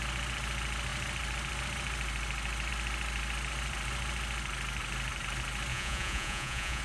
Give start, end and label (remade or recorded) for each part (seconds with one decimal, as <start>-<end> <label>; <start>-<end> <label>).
0.0-5.7 recorded; 5.7-6.8 remade